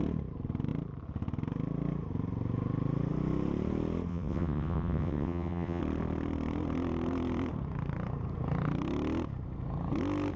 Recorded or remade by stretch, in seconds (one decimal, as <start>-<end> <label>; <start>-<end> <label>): 0.0-4.1 recorded; 4.1-5.8 remade; 5.8-10.4 recorded